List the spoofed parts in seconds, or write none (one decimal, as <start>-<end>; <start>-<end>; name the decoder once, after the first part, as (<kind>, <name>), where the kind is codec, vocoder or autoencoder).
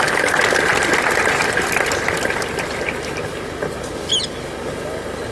none